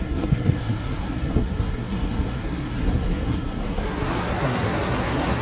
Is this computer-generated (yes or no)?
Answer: yes